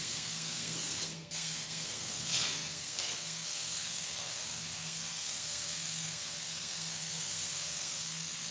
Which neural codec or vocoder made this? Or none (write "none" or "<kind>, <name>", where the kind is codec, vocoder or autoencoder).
codec, SNAC